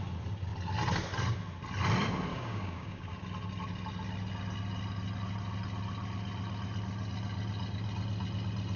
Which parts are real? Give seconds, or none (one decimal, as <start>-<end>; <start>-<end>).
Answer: 0.0-2.3; 3.0-8.8